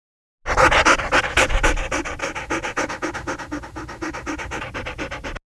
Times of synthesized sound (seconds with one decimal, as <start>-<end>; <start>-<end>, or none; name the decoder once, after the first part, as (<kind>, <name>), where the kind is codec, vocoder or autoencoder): 2.2-4.6 (autoencoder, DAC-VAE)